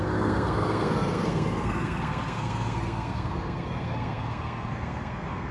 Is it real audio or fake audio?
fake